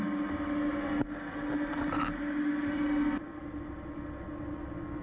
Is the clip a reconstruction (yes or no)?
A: no